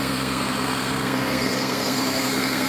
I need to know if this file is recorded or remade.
remade